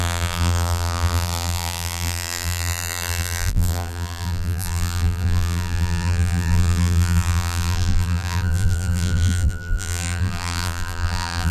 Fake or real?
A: fake